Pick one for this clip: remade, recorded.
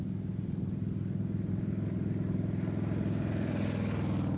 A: recorded